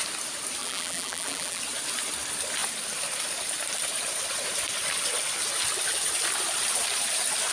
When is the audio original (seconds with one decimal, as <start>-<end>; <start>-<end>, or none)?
0.0-0.6; 1.6-7.5